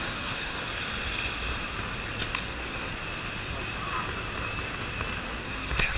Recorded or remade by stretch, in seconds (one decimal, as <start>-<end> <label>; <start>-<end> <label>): 0.0-0.6 remade; 0.6-2.5 recorded; 2.5-2.9 remade; 2.9-5.4 recorded; 5.4-6.0 remade